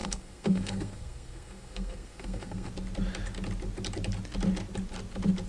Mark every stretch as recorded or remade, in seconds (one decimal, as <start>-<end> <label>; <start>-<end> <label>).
0.0-2.7 remade; 2.7-5.5 recorded